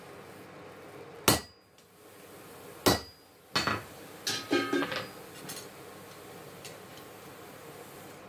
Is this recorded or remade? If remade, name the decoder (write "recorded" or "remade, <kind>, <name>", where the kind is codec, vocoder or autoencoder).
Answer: recorded